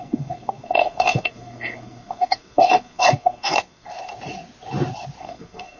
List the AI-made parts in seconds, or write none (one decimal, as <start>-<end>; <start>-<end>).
0.0-3.9; 5.2-5.8